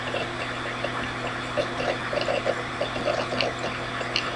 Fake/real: real